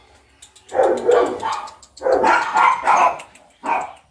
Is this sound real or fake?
real